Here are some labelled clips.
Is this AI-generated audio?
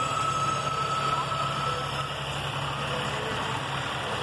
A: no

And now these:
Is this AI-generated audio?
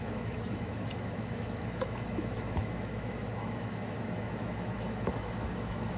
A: yes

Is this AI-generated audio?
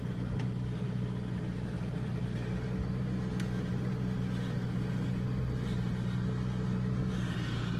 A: no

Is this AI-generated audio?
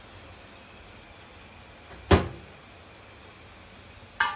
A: no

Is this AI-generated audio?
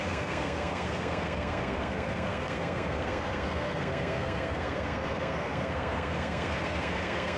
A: yes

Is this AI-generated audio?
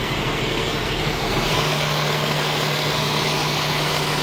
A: yes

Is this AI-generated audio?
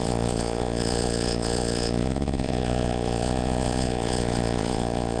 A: yes